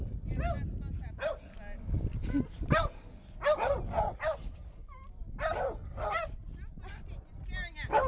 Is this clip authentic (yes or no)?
yes